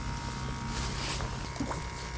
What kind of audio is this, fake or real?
real